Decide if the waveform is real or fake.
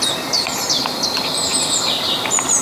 real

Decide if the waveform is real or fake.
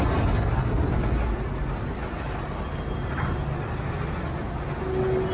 real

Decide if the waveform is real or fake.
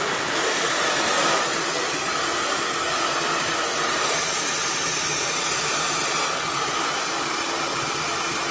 real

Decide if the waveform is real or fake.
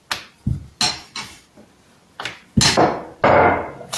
real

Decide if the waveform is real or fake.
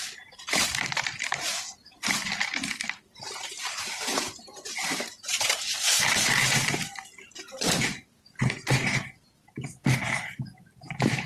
fake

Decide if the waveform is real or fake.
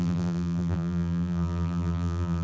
fake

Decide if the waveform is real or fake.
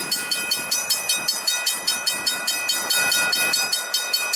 fake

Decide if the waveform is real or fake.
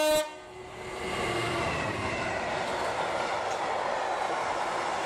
real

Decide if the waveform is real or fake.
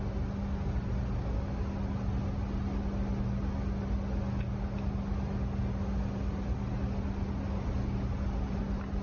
real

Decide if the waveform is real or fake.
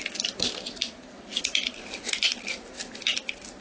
fake